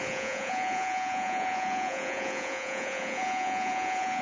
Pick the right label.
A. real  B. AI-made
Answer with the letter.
B